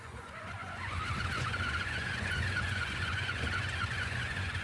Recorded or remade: remade